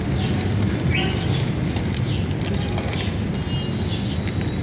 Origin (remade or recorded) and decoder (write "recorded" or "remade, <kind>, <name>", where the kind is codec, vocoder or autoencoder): recorded